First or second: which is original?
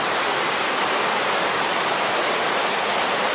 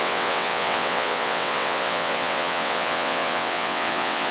first